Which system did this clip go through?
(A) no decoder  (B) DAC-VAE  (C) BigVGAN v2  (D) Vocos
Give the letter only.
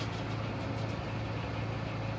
A